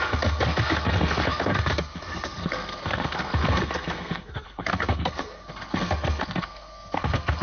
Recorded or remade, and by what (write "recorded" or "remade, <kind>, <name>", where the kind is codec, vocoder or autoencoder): remade, codec, SNAC